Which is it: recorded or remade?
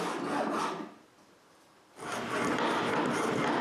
recorded